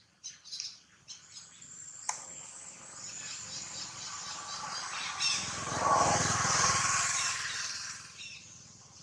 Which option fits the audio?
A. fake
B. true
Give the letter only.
B